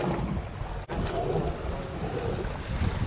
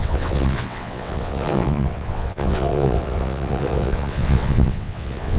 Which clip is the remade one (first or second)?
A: second